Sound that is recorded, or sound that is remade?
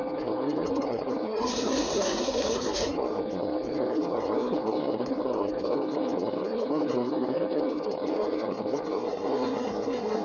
remade